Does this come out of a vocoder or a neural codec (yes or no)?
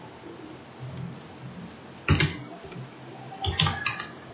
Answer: no